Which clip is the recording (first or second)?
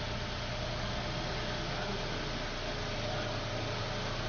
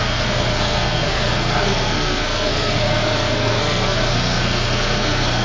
first